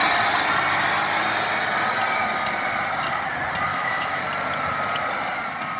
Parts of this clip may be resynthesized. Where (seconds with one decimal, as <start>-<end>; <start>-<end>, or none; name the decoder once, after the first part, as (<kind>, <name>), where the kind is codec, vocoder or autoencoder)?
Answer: 3.7-4.2 (autoencoder, DAC-VAE)